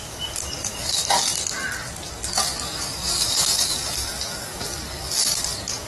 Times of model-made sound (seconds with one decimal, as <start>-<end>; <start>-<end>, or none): 0.0-1.3; 2.2-5.9